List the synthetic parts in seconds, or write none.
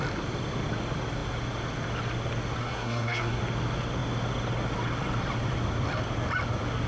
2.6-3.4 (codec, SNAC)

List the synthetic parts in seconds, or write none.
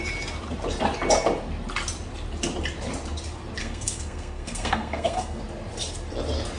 3.6-5.4 (codec, SNAC)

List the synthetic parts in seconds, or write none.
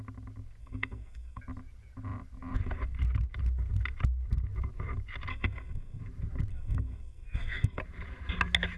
0.6-1.4 (codec, SNAC); 5.3-6.0; 6.5-7.8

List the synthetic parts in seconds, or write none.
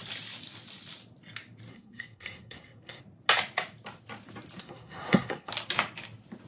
1.7-3.0 (codec, SNAC); 4.6-5.5